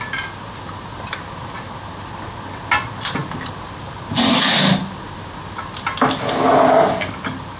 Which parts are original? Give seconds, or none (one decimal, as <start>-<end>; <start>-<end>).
0.0-7.6